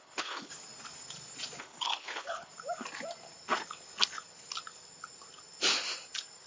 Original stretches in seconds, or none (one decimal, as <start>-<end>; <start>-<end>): 0.5-1.6; 2.5-6.5